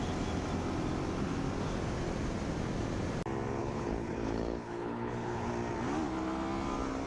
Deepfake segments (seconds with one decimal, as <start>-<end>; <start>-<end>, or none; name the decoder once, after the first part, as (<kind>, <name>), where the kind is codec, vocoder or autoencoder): 3.6-5.5 (codec, HILCodec)